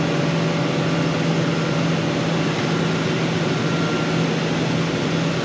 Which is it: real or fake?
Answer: real